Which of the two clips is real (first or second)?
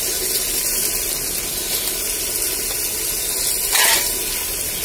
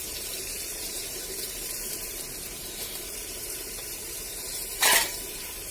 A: first